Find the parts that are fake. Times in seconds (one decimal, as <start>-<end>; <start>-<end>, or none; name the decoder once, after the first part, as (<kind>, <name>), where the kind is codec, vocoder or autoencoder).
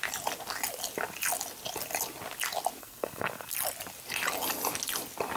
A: 2.8-3.5 (codec, SNAC)